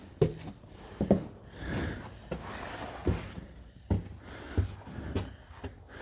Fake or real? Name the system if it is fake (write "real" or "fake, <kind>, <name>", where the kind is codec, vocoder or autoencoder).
real